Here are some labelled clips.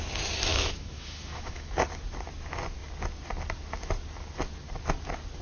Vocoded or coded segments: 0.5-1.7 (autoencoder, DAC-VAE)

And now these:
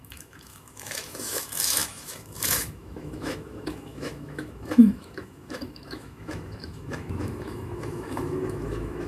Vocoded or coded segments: 0.0-9.1 (autoencoder, DAC-VAE)

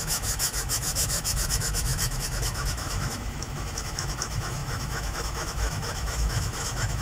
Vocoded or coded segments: 0.0-7.0 (autoencoder, DAC-VAE)

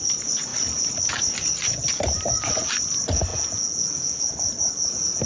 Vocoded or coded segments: 3.3-4.2 (vocoder, Vocos)

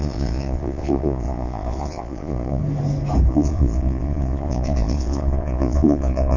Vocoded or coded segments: 0.0-2.6 (vocoder, Vocos); 3.3-6.4